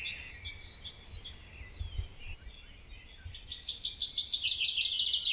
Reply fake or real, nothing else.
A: real